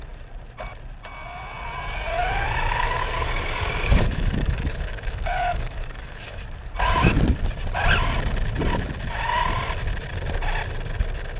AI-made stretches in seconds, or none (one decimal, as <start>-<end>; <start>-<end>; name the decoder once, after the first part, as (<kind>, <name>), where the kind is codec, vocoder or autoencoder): 2.2-6.4 (codec, DAC)